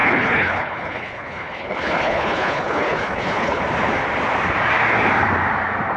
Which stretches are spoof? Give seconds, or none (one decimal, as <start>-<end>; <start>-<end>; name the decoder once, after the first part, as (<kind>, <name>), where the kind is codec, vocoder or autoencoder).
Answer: 0.0-3.6 (codec, HILCodec)

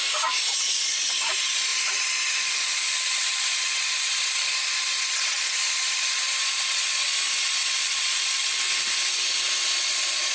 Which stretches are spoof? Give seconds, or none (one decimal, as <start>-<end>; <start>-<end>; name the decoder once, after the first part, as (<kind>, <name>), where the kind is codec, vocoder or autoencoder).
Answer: 0.7-8.5 (vocoder, Vocos); 9.8-10.3

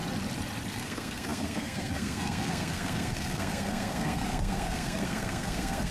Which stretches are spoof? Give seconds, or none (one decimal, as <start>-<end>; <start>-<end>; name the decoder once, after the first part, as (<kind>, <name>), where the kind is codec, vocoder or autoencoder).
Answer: 0.7-5.9 (codec, SNAC)

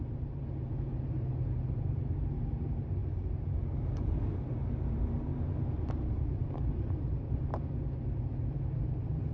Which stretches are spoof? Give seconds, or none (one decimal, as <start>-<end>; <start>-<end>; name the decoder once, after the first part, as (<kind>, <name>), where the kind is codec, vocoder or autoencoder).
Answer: 0.0-9.3 (vocoder, BigVGAN v2)

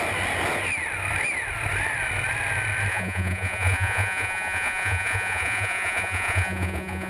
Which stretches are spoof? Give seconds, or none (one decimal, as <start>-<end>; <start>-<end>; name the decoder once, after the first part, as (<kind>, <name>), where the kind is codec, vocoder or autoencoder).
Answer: 2.9-7.1 (vocoder, Vocos)

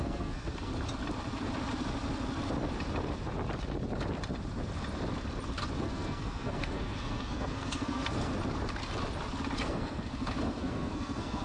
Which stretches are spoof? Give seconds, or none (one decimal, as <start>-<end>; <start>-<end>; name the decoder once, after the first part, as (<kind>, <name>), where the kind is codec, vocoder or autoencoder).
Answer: 0.0-0.7 (codec, SNAC); 5.8-8.3; 9.6-11.4

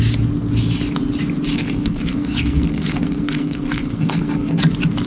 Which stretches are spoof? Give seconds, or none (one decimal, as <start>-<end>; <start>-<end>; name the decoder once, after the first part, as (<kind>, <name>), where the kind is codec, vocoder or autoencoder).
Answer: 1.5-4.6 (codec, SNAC)

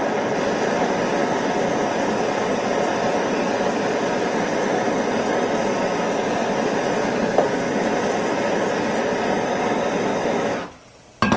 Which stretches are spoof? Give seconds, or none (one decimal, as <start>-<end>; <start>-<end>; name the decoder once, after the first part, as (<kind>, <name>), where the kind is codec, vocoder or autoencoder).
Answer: 10.1-10.7 (autoencoder, DAC-VAE)